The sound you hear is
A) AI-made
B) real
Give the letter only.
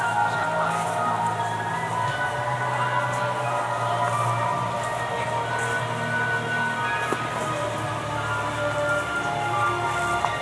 B